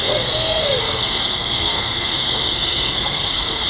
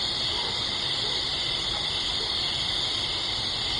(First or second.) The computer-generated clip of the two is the first